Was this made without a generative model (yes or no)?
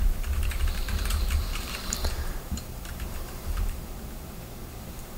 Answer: no